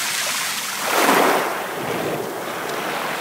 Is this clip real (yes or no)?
yes